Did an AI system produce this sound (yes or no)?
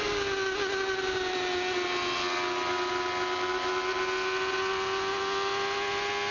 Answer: no